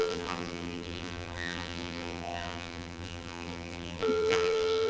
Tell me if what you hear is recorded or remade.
remade